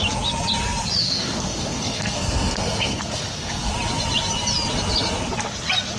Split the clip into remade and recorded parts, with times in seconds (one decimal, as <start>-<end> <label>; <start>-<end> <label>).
0.0-1.0 recorded; 1.0-3.7 remade; 3.7-6.0 recorded